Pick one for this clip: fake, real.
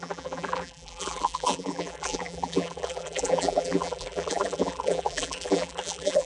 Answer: fake